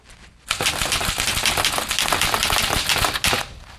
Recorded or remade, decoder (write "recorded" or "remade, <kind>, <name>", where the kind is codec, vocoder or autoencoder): recorded